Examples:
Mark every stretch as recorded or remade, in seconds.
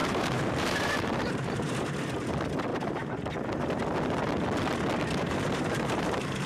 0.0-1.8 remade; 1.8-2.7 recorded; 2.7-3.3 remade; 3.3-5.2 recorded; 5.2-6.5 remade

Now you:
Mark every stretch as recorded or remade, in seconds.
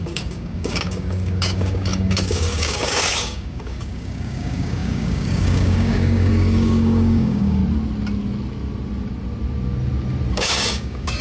0.0-7.6 remade; 7.6-10.3 recorded; 10.3-11.2 remade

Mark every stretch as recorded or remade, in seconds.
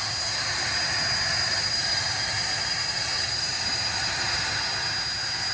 0.0-1.3 recorded; 1.3-4.6 remade; 4.6-5.5 recorded